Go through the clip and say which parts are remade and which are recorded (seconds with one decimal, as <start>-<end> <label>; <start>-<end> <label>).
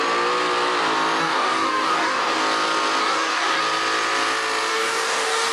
0.0-1.2 recorded; 1.2-2.4 remade; 2.4-3.0 recorded; 3.0-3.6 remade; 3.6-4.7 recorded; 4.7-5.5 remade